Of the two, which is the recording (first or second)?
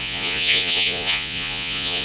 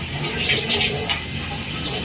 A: second